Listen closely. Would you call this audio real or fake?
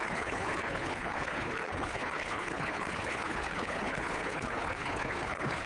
fake